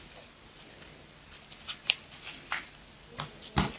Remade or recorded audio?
recorded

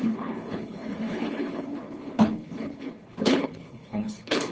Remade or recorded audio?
remade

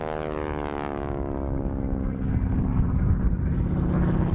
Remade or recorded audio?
recorded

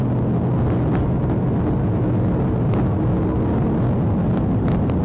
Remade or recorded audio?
recorded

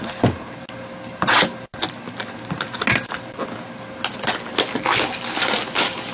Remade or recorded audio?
recorded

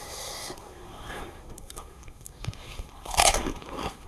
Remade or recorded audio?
remade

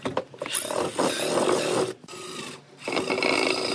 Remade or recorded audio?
recorded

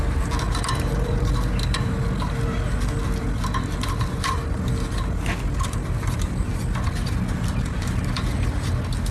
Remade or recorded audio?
recorded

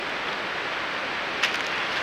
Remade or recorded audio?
recorded